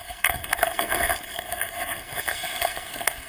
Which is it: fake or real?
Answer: fake